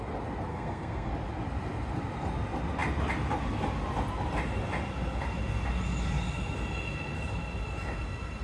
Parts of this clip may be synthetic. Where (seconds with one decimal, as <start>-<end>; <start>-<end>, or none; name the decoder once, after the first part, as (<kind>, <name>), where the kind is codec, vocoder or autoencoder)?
0.5-1.1 (codec, SNAC)